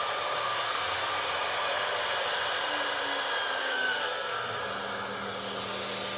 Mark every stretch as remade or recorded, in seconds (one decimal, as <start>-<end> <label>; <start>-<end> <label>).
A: 0.0-0.4 recorded; 0.4-1.1 remade; 1.1-3.6 recorded; 3.6-4.6 remade; 4.6-6.2 recorded